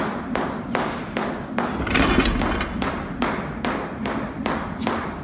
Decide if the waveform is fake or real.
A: real